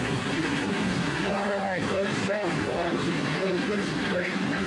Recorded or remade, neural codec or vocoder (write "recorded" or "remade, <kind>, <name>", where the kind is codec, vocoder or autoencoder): remade, codec, SNAC